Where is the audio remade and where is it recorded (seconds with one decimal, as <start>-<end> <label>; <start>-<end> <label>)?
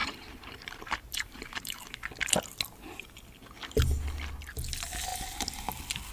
0.0-1.8 remade; 1.8-6.1 recorded